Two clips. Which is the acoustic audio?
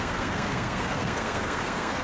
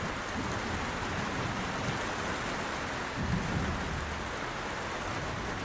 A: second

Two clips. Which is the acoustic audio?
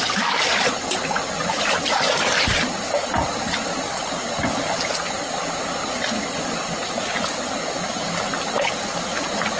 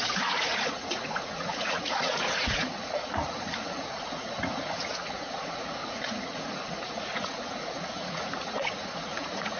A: first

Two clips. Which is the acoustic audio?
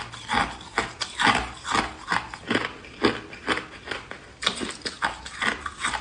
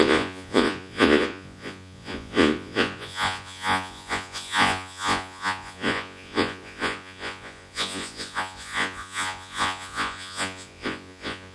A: first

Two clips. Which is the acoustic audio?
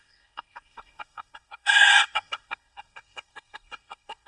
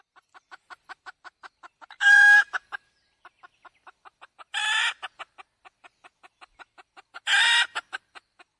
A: second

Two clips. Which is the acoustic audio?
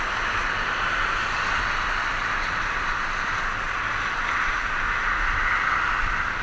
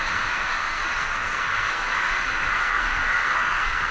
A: first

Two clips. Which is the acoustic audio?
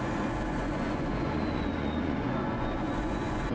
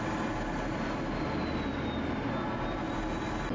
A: second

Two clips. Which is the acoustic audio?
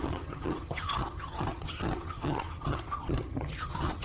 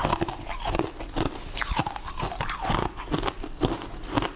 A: second